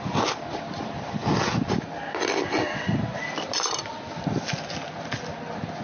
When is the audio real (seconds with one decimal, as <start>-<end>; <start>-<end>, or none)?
0.0-5.8